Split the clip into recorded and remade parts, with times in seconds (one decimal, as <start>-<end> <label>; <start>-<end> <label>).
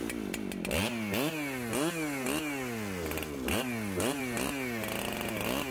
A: 0.0-5.7 recorded